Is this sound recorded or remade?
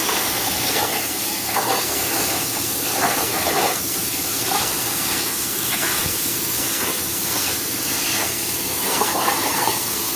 remade